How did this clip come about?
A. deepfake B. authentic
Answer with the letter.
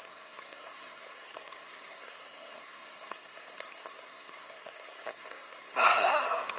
A